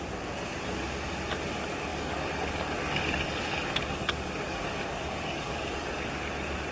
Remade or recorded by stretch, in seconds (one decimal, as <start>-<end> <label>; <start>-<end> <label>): 0.0-1.9 recorded; 1.9-5.9 remade; 5.9-6.7 recorded